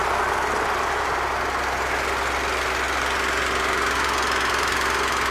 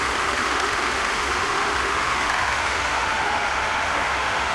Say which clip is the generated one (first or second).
second